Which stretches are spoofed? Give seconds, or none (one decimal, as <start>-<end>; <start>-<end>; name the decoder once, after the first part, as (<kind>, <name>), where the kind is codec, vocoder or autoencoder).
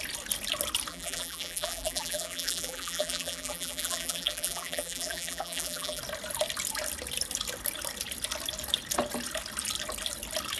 0.9-6.0 (vocoder, BigVGAN v2)